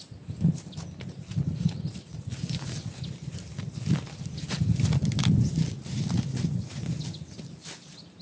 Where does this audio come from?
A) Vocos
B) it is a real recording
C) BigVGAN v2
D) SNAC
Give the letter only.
B